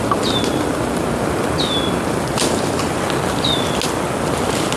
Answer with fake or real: real